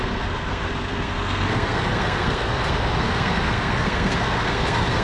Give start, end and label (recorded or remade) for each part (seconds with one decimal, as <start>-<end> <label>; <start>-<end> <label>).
0.0-5.0 remade